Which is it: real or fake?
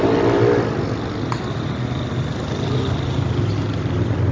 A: real